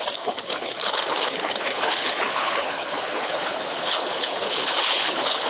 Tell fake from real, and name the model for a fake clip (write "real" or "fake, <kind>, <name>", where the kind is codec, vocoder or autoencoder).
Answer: fake, codec, HILCodec